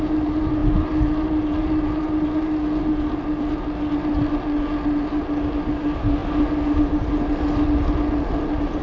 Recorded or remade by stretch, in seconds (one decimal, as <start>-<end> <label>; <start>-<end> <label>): 0.0-8.8 recorded

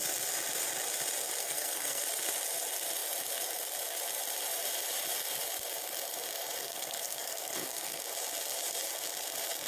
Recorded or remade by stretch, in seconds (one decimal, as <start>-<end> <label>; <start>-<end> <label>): 0.0-1.4 recorded; 1.4-2.0 remade; 2.0-6.6 recorded; 6.6-8.0 remade; 8.0-9.7 recorded

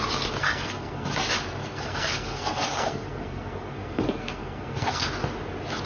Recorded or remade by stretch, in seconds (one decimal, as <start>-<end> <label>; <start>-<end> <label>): 0.0-0.4 recorded; 0.4-1.1 remade; 1.1-1.6 recorded; 1.6-5.1 remade; 5.1-5.9 recorded

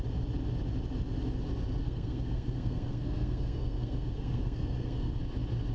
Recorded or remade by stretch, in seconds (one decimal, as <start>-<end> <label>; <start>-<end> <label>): 0.0-1.8 recorded; 1.8-5.2 remade; 5.2-5.7 recorded